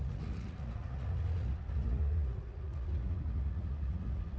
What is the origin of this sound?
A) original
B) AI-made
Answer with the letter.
B